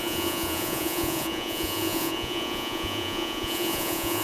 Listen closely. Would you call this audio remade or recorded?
remade